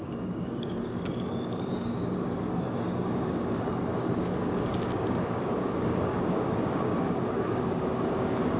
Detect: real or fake fake